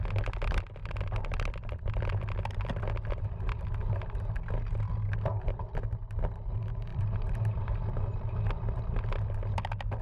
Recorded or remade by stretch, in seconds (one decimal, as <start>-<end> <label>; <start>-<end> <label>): 0.0-6.9 recorded; 6.9-8.4 remade; 8.4-10.0 recorded